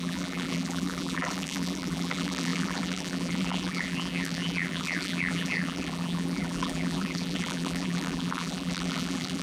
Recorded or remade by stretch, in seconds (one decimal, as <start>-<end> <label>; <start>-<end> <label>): 0.0-9.4 remade